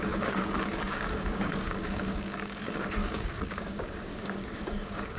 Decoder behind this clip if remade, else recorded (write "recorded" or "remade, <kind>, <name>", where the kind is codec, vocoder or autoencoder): remade, codec, DAC